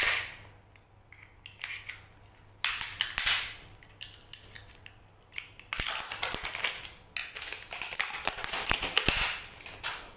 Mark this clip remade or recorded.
recorded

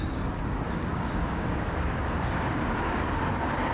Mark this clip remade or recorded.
remade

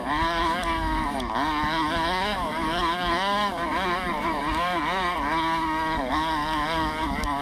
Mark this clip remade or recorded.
remade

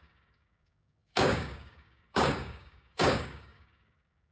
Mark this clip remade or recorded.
remade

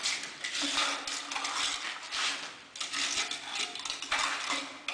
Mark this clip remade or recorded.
recorded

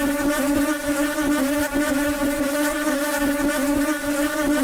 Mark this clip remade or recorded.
recorded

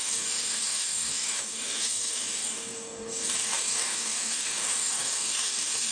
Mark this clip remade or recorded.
remade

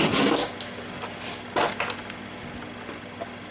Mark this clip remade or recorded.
recorded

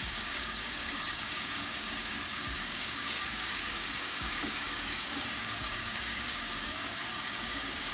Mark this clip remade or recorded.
remade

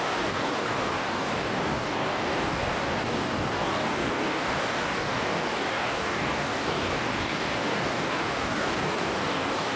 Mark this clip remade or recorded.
remade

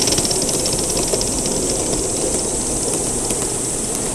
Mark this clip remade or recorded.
recorded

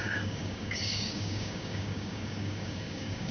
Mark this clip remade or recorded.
remade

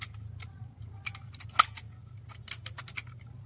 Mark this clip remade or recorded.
recorded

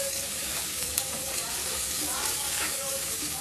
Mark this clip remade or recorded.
remade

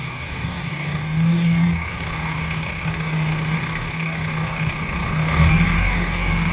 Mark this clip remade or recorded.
remade